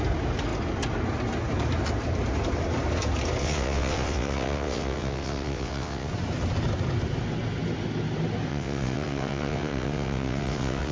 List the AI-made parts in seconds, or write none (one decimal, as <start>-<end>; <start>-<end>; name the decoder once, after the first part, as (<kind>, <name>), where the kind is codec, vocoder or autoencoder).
3.4-6.1 (vocoder, WaveNeXt); 8.5-10.9